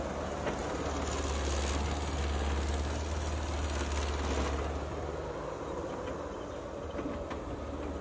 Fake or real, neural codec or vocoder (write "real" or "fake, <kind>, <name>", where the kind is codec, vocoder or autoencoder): real